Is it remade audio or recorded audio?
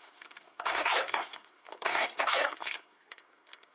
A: remade